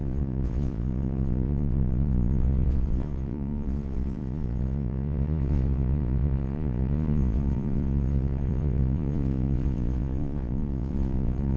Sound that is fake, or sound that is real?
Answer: fake